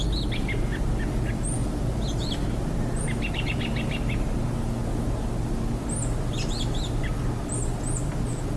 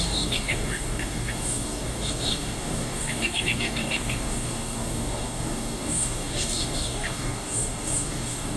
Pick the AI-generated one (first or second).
second